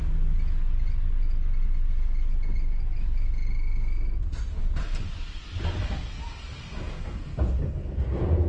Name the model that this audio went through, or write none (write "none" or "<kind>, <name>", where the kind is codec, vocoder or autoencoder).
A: none